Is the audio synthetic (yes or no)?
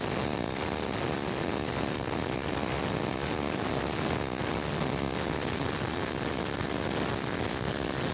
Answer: no